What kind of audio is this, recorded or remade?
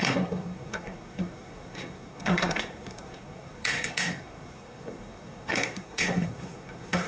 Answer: remade